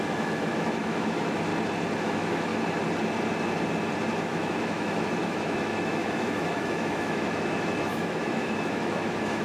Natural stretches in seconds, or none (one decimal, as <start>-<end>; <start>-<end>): 1.5-2.0; 2.5-4.2